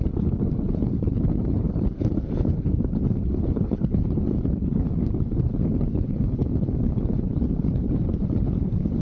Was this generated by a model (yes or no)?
yes